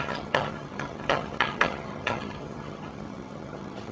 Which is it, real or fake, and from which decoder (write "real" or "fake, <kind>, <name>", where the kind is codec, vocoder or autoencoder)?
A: fake, vocoder, HiFi-GAN